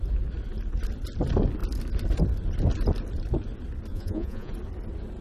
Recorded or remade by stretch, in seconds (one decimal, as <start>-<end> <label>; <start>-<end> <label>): 0.0-3.9 recorded; 3.9-4.5 remade; 4.5-5.2 recorded